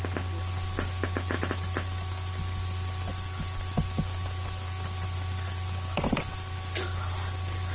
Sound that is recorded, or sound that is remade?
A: recorded